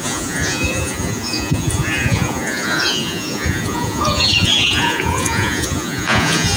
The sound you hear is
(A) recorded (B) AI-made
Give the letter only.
B